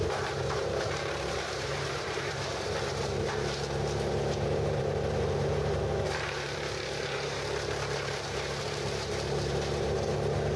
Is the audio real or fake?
fake